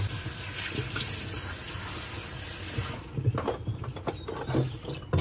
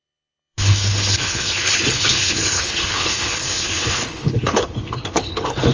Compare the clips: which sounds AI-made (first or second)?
second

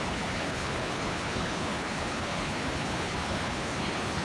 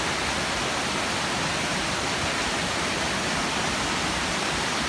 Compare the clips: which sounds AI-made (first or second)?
first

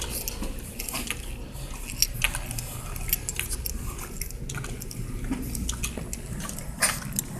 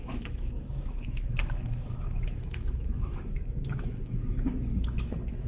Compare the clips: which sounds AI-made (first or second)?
second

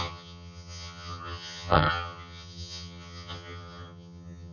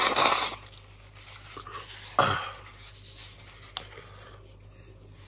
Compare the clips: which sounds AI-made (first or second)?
first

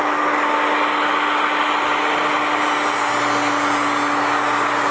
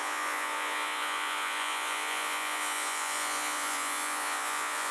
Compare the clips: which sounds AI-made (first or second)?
second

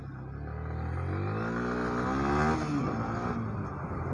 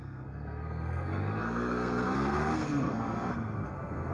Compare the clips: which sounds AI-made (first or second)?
second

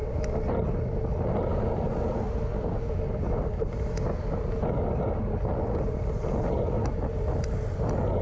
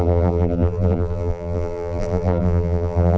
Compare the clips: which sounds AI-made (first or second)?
second